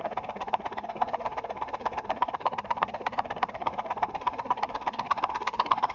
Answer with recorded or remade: remade